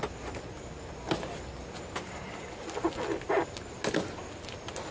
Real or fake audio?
real